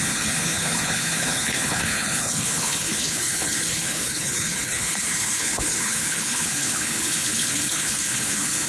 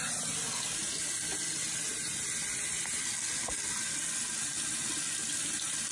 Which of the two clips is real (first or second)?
second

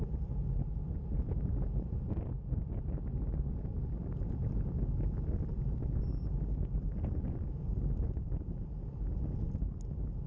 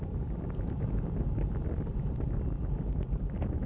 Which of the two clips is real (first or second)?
first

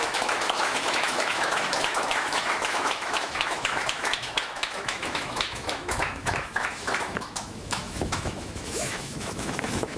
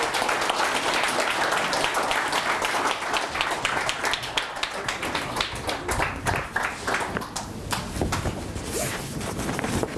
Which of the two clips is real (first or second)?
second